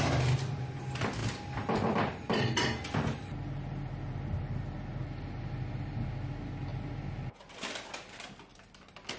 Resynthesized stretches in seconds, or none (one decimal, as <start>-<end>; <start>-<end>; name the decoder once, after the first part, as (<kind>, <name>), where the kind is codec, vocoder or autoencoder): 6.7-7.9 (vocoder, BigVGAN v2); 8.5-9.2